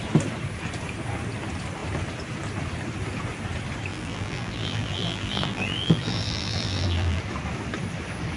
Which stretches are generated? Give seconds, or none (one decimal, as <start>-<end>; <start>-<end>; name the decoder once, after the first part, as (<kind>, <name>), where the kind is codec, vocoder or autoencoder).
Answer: 3.9-7.2 (vocoder, BigVGAN v2)